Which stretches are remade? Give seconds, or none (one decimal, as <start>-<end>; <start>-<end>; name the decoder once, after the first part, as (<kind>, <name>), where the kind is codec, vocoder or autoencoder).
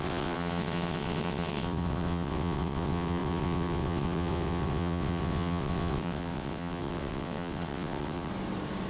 0.0-8.3 (vocoder, WaveNeXt)